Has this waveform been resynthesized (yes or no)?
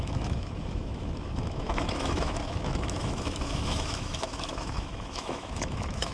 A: yes